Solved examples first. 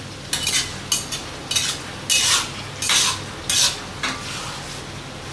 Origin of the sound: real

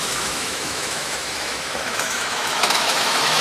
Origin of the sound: fake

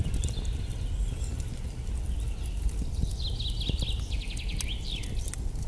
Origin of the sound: real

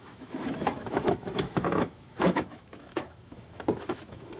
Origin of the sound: fake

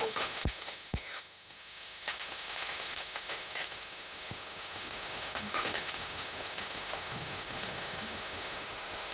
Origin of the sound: fake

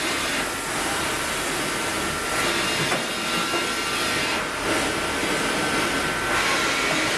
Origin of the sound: real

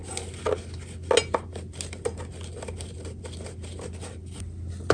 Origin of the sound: real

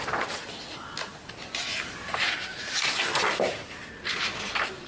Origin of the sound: real